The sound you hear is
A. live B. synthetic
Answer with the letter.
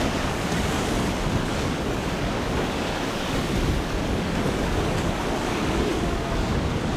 B